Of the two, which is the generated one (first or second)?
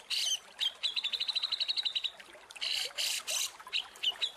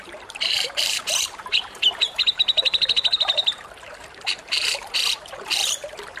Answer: second